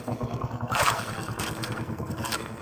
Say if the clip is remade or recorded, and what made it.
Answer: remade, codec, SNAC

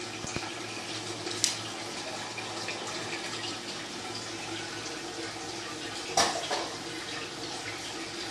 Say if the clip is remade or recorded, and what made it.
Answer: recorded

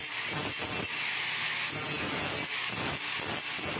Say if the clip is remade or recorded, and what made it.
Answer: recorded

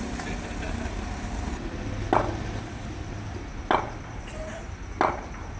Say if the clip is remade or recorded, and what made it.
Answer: recorded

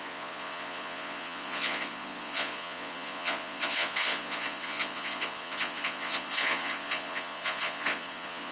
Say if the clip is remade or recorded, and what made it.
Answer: remade, vocoder, Vocos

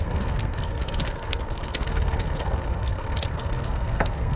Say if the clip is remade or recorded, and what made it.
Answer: remade, codec, SNAC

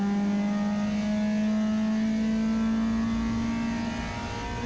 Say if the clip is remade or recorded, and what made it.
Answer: recorded